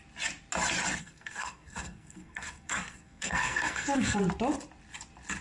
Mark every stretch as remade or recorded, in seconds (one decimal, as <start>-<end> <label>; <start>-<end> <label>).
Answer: 0.0-1.0 recorded; 1.0-4.2 remade; 4.2-5.4 recorded